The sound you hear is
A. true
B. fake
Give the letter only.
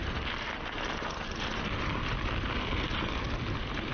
A